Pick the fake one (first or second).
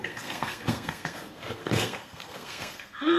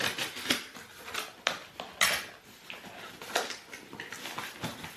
first